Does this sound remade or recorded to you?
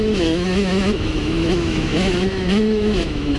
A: remade